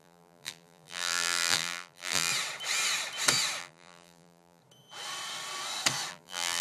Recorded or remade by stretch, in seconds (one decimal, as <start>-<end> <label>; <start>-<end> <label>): 0.0-2.3 remade; 2.3-3.6 recorded; 3.6-4.6 remade; 4.6-6.1 recorded; 6.1-6.6 remade